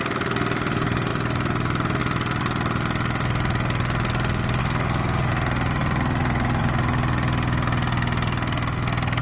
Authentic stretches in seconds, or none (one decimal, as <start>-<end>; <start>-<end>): 0.0-4.6; 5.3-9.2